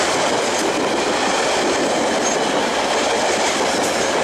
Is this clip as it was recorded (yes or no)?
yes